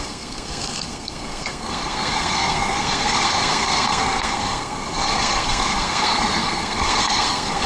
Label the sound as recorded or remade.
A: remade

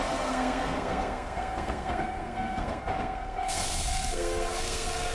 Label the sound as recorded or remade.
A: remade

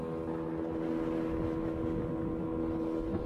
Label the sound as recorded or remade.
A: recorded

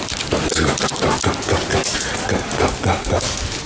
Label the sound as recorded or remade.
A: recorded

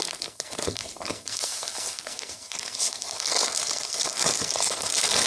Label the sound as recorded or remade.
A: remade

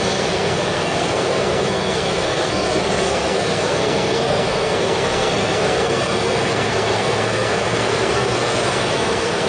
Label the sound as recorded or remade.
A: remade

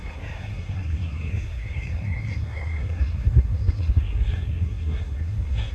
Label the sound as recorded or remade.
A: remade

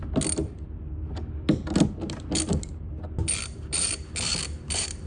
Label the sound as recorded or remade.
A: recorded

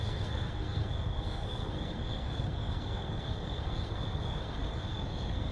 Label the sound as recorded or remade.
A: remade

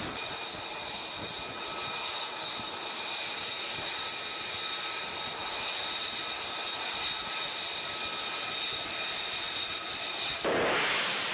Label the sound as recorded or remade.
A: recorded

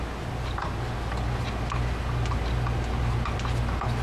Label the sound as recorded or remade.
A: recorded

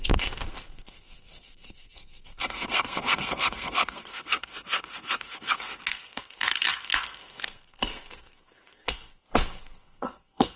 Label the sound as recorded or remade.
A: remade